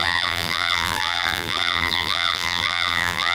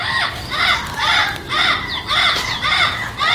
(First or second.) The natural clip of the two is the second